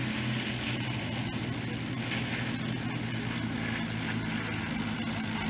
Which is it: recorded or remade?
recorded